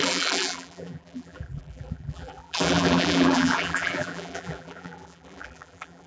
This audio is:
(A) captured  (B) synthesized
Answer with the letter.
B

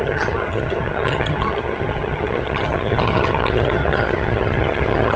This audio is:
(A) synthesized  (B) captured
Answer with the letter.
A